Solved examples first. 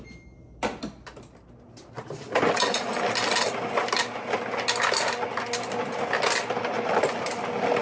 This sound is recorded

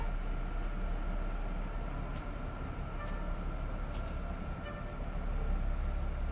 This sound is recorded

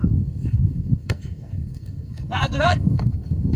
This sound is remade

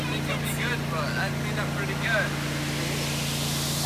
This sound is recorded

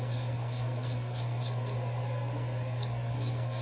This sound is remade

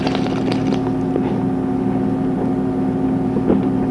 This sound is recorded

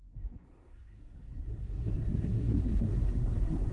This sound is remade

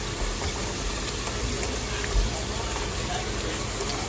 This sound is recorded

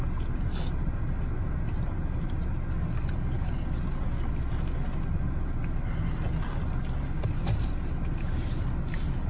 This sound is recorded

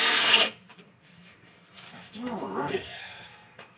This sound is remade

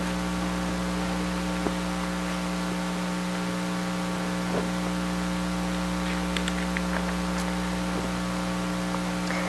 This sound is recorded